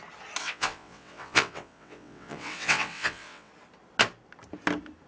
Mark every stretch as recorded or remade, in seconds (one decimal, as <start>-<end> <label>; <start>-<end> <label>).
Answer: 0.0-0.4 recorded; 0.4-3.5 remade; 3.5-5.1 recorded